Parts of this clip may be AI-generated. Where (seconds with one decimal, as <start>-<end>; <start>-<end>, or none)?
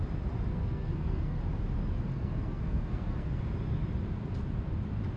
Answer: 0.5-1.4; 2.1-3.4